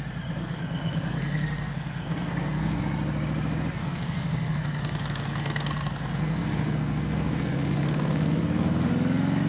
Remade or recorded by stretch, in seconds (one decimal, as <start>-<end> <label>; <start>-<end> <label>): 0.0-0.4 recorded; 0.4-2.8 remade; 2.8-3.8 recorded; 3.8-8.9 remade; 8.9-9.5 recorded